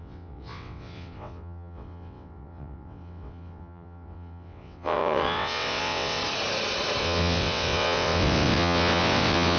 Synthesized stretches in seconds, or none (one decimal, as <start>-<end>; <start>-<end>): 0.0-6.2; 7.0-9.6